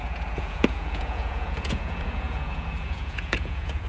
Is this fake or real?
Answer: fake